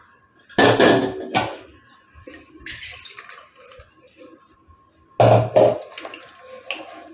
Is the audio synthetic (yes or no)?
no